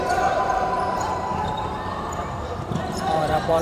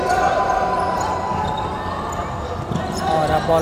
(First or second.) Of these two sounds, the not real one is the first